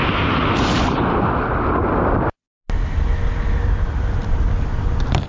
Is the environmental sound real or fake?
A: real